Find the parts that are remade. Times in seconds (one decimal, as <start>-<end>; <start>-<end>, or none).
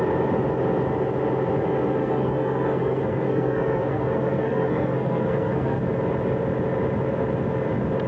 2.0-5.8